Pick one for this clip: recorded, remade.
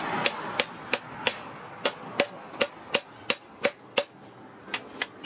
recorded